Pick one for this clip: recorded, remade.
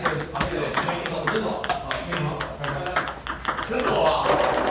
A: recorded